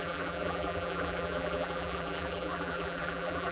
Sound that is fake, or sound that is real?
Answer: fake